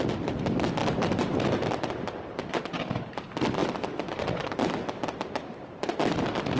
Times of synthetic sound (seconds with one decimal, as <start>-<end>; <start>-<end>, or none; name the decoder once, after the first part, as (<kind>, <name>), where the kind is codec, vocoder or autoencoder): 0.8-1.7 (vocoder, BigVGAN v2); 3.6-4.2